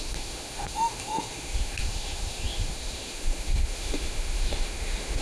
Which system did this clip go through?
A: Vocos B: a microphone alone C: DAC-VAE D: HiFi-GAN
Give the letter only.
C